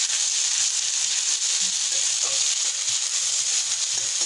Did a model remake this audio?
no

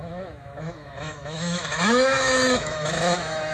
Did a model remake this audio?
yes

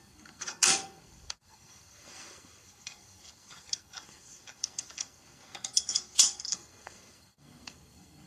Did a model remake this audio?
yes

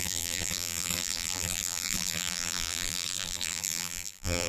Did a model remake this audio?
yes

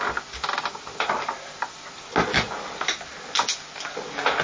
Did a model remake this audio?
no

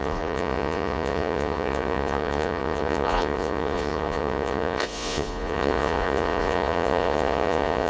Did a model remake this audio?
yes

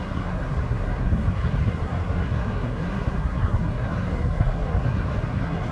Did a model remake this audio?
yes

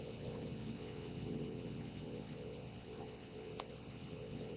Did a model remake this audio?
yes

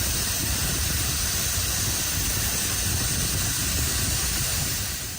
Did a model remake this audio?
no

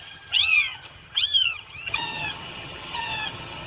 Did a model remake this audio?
yes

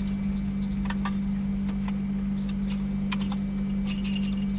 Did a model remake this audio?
no